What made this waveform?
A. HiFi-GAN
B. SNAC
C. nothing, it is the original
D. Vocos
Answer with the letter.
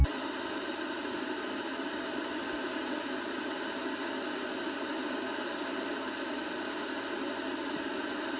C